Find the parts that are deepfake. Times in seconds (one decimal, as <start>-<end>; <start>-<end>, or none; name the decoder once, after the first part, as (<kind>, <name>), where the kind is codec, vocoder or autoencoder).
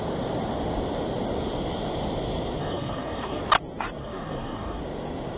2.6-3.4 (codec, DAC); 4.0-4.8